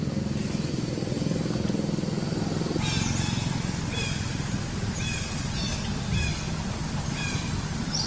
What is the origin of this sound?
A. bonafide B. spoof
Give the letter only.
A